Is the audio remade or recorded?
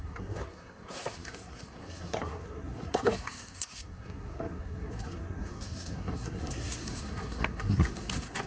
remade